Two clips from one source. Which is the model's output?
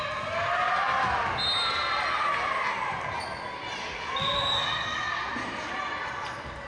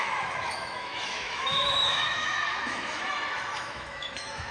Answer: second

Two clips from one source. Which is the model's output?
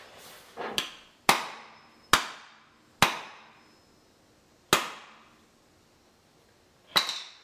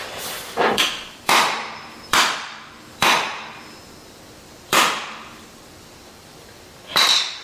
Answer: second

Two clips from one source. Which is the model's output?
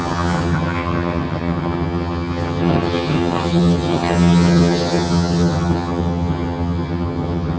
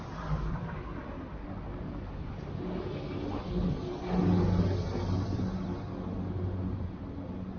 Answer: first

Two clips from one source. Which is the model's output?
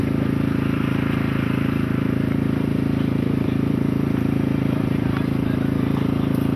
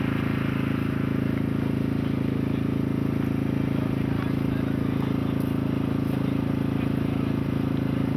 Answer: first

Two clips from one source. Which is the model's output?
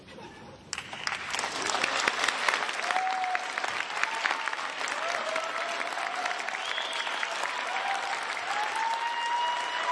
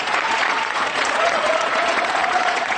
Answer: second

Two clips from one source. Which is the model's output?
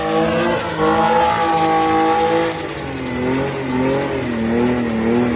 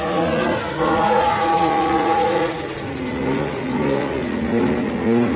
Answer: second